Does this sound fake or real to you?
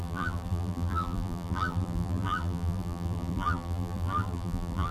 fake